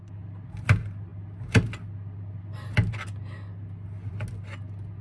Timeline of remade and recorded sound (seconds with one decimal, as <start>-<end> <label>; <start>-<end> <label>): 0.0-5.0 recorded